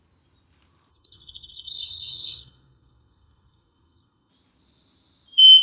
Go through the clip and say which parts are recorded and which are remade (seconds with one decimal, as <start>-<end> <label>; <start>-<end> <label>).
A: 0.0-0.9 recorded; 0.9-4.3 remade; 4.3-5.6 recorded

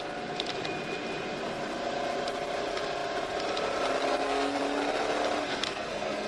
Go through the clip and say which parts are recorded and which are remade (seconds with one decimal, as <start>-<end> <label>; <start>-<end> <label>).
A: 0.0-4.1 recorded; 4.1-4.6 remade; 4.6-5.5 recorded; 5.5-6.3 remade